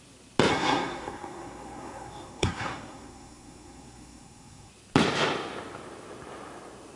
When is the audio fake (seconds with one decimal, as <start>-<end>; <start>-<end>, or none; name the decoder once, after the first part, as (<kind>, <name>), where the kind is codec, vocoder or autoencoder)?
0.5-4.7 (codec, SNAC)